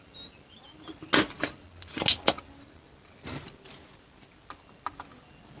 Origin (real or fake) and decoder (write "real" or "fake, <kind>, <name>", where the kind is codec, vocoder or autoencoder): real